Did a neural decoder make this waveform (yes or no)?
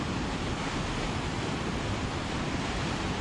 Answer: no